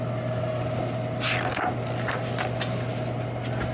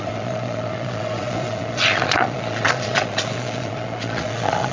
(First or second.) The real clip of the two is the first